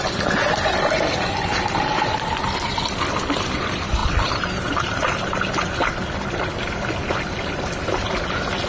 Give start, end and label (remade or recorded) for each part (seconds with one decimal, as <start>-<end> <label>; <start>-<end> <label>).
0.0-8.7 recorded

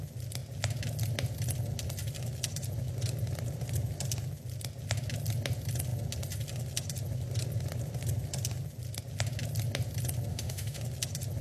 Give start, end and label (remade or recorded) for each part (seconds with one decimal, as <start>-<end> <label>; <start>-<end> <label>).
0.0-10.3 recorded; 10.3-10.8 remade; 10.8-11.4 recorded

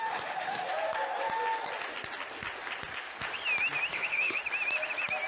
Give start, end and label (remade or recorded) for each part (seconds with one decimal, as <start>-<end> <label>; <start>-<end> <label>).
0.0-0.7 remade; 0.7-3.9 recorded; 3.9-4.4 remade; 4.4-5.3 recorded

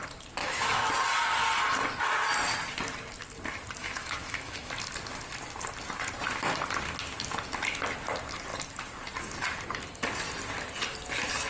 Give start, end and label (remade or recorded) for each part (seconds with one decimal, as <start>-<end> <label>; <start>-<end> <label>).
0.0-0.4 recorded; 0.4-0.9 remade; 0.9-3.8 recorded; 3.8-4.7 remade; 4.7-11.5 recorded